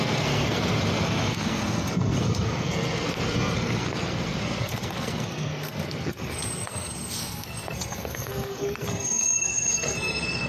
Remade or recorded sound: remade